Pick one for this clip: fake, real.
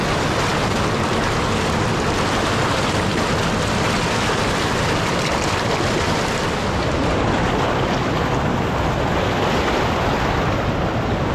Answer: real